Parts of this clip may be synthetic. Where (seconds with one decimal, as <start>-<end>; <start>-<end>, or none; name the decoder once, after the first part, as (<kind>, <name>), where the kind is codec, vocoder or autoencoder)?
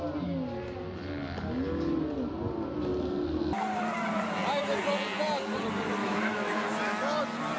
6.0-6.6 (autoencoder, DAC-VAE)